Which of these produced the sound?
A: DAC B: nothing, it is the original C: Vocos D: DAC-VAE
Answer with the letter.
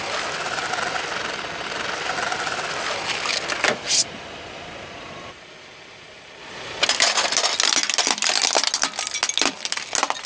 B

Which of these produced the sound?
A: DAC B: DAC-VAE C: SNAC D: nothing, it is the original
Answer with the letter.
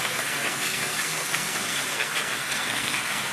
C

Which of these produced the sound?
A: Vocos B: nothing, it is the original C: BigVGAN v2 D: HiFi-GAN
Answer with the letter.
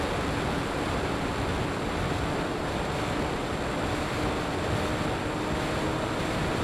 B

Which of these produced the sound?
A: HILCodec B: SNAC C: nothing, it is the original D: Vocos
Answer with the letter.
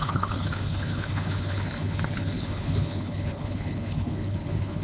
A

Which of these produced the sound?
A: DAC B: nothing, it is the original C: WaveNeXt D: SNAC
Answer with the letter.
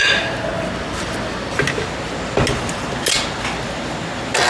B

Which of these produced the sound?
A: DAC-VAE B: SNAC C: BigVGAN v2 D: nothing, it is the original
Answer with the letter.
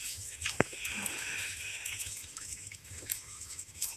A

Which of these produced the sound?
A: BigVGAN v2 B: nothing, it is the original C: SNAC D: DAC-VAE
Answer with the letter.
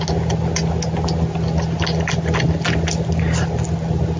B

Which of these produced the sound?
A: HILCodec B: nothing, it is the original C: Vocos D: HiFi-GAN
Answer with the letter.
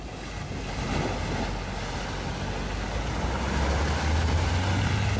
B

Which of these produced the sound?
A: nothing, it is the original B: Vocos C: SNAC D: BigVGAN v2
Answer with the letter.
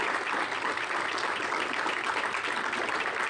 A